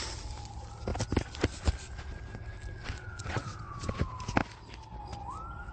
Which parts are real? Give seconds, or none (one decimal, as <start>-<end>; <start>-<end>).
0.0-2.8; 4.0-5.7

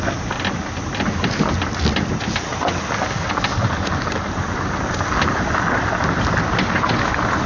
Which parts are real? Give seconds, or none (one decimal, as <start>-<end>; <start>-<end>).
0.0-7.5